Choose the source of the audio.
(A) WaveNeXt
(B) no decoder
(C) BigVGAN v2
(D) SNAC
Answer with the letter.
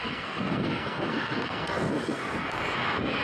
D